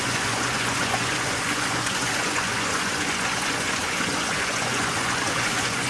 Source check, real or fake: fake